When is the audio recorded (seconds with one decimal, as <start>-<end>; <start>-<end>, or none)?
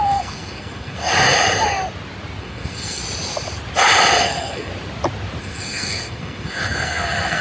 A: 1.1-2.4; 3.0-4.2; 4.7-5.4